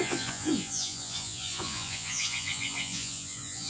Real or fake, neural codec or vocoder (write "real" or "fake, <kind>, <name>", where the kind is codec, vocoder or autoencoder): fake, vocoder, Vocos